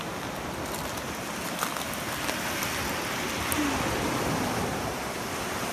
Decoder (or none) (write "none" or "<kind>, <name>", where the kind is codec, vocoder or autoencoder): none